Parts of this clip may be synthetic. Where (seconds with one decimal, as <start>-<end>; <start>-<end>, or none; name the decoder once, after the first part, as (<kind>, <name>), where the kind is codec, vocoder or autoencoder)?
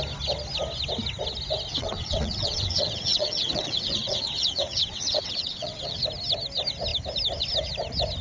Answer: 1.7-6.0 (vocoder, WaveNeXt)